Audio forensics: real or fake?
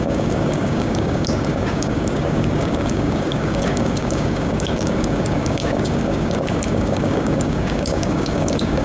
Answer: fake